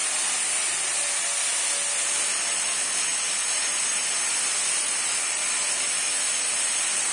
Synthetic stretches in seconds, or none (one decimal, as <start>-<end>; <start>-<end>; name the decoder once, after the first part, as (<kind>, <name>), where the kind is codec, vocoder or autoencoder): none